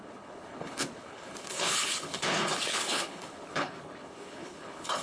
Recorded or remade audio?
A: remade